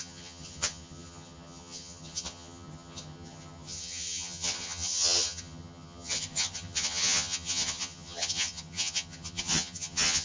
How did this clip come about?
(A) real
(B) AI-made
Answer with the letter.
B